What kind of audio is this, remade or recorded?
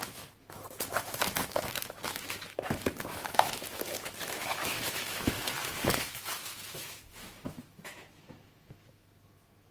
remade